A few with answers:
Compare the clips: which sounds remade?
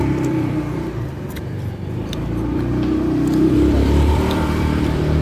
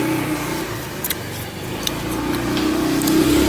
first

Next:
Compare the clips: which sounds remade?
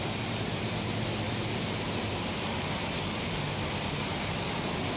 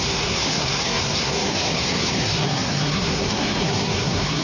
second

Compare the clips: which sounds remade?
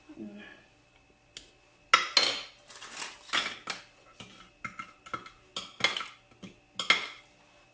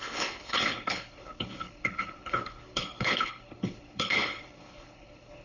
second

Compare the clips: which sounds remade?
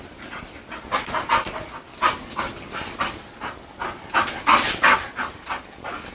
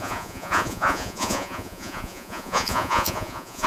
second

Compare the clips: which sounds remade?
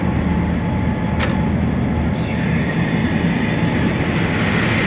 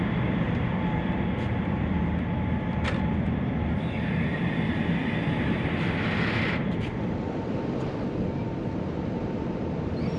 second